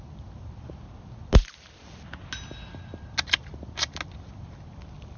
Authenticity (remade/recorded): recorded